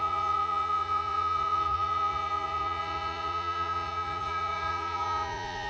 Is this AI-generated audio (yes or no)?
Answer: yes